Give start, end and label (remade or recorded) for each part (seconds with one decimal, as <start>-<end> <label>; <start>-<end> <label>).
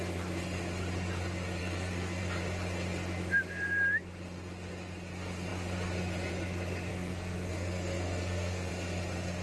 0.0-1.6 recorded; 1.6-2.2 remade; 2.2-6.9 recorded; 6.9-8.7 remade; 8.7-9.4 recorded